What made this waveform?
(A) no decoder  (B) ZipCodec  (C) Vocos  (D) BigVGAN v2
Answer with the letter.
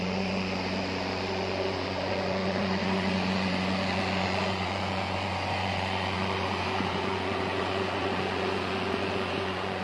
C